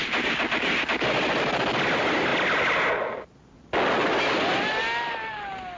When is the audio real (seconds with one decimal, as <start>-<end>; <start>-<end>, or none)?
0.0-5.8

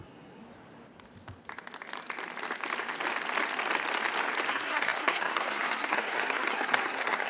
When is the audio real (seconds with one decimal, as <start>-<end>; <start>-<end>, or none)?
0.4-4.5